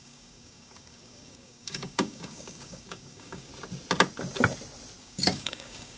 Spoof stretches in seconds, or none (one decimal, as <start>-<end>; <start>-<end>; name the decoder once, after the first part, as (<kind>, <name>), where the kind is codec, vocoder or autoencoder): 0.0-3.5 (codec, DAC); 5.0-6.0